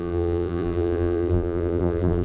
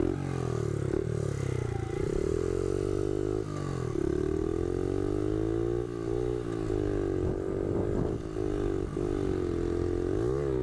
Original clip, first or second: second